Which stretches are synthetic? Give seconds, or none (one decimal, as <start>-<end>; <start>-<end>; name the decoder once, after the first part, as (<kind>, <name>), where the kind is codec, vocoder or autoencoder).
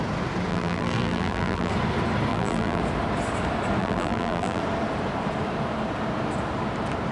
0.5-1.7 (vocoder, BigVGAN v2); 2.3-2.8; 3.8-4.6